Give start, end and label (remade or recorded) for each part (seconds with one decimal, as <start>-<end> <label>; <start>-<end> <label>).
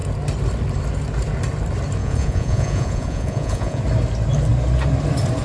0.0-2.0 recorded; 2.0-3.8 remade; 3.8-5.4 recorded